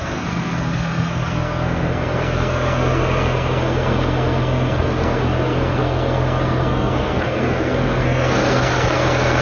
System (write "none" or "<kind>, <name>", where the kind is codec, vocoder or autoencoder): codec, SNAC